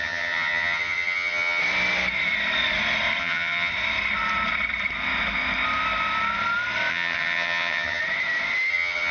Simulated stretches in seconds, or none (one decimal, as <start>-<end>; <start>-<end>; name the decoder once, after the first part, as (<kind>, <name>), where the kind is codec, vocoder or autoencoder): 0.0-1.6 (vocoder, HiFi-GAN); 3.2-3.7; 6.9-8.0; 8.7-9.1